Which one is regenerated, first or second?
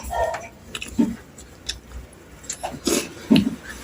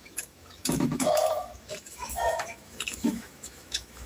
second